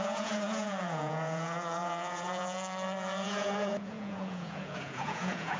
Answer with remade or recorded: remade